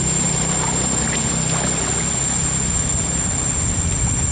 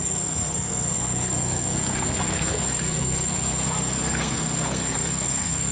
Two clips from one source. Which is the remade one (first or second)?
second